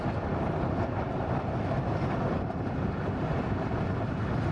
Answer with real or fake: real